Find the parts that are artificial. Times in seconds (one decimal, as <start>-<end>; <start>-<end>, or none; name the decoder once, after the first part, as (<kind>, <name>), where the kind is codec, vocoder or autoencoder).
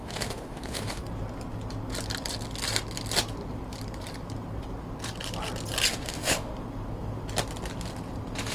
0.0-1.0 (autoencoder, DAC-VAE); 5.9-6.5